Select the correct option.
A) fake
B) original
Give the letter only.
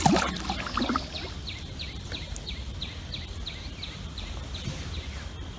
B